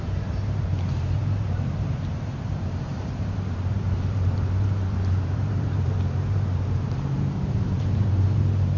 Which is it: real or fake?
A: fake